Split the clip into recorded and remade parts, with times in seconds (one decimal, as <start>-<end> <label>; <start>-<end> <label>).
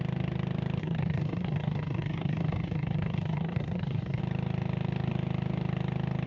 0.0-0.8 recorded; 0.8-4.2 remade; 4.2-6.3 recorded